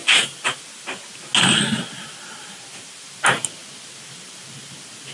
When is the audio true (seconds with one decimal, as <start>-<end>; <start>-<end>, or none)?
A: 0.0-5.1